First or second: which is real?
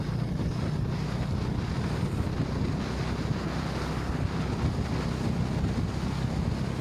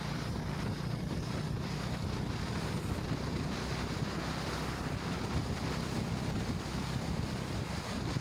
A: first